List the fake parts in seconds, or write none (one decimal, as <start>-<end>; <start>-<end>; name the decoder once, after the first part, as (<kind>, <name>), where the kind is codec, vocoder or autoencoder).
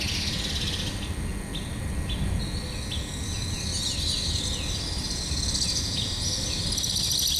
none